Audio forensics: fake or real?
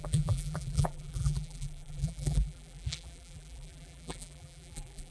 fake